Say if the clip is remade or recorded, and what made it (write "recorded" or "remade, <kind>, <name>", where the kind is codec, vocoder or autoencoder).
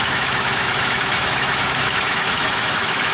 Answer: remade, autoencoder, DAC-VAE